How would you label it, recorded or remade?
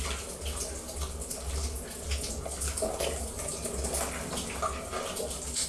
recorded